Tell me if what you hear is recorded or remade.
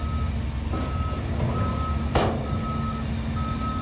recorded